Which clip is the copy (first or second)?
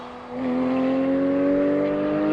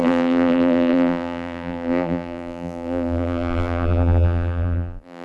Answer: second